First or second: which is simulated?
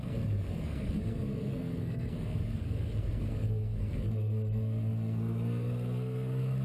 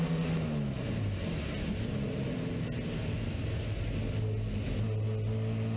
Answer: first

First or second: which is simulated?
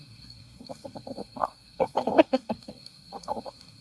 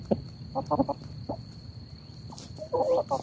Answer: first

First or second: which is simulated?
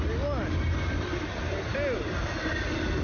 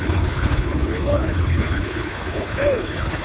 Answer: second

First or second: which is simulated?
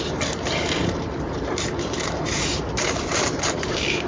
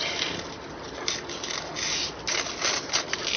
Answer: first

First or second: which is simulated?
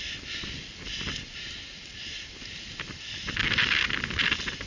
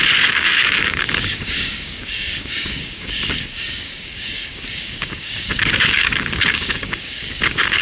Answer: second